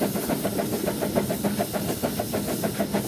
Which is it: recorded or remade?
remade